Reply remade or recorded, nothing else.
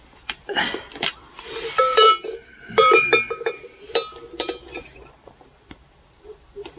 remade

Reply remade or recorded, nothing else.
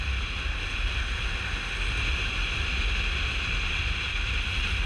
recorded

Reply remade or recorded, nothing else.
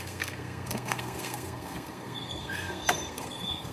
remade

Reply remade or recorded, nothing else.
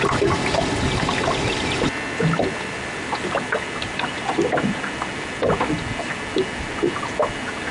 recorded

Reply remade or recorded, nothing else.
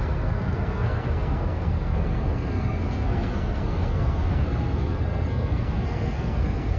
remade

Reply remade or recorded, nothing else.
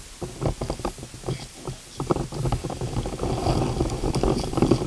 recorded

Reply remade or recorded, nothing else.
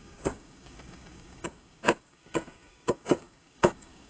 remade